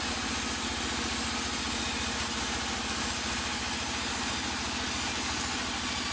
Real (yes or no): yes